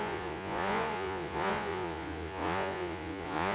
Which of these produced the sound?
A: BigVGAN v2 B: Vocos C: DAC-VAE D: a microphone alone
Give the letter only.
B